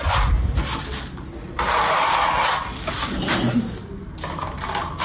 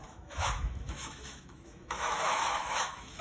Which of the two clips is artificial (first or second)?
second